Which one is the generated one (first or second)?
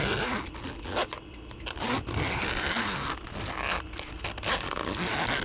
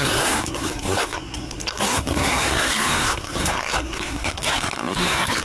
second